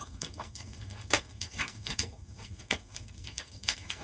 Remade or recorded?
remade